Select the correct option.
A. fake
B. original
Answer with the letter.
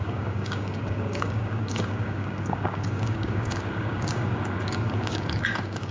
A